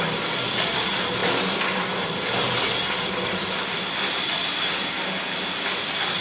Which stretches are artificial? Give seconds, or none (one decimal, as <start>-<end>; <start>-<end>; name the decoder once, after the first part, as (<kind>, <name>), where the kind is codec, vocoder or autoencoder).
none